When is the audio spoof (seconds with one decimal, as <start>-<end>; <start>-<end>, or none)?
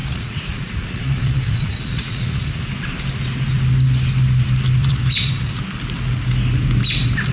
0.0-2.6; 4.8-5.6